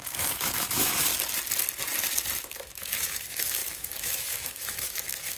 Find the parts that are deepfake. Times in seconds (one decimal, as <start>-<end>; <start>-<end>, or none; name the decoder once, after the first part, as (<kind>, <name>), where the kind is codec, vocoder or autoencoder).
0.0-1.1 (autoencoder, DAC-VAE); 2.4-5.4